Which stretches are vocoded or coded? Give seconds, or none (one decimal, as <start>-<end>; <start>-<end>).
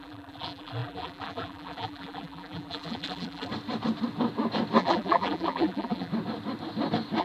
0.0-3.5; 4.8-6.1